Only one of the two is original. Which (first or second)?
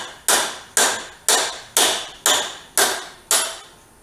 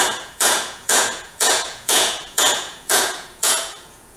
first